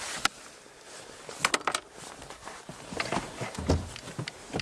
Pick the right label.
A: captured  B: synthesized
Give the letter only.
A